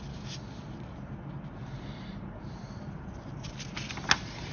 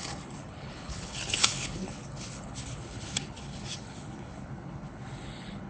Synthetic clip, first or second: second